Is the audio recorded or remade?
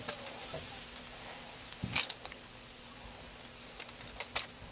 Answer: recorded